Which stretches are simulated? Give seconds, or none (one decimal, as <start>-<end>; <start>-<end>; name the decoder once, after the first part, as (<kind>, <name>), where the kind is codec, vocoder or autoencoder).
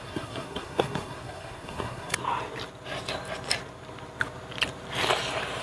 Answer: 0.0-2.2 (codec, SNAC)